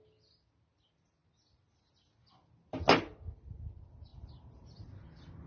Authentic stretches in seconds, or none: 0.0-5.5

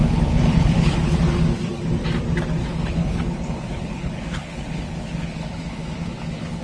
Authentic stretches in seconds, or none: 1.2-2.6